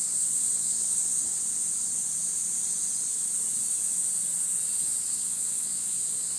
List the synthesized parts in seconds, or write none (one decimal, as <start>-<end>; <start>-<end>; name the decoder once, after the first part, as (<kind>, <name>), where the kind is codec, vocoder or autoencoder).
0.0-1.2 (vocoder, Vocos); 5.0-6.4